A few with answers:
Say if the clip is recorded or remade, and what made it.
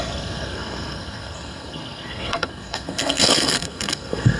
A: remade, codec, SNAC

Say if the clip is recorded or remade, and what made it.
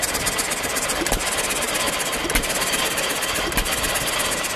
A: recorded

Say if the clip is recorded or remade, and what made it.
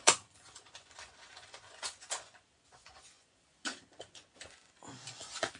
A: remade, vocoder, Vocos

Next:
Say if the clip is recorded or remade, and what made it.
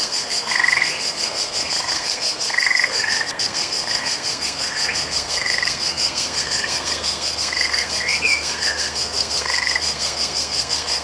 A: remade, codec, SNAC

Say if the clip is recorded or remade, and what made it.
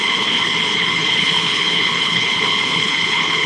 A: remade, codec, HILCodec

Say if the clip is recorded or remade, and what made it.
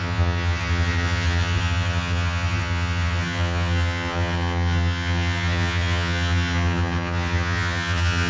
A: remade, vocoder, HiFi-GAN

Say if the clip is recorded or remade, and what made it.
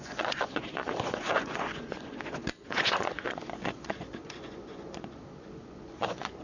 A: remade, vocoder, Vocos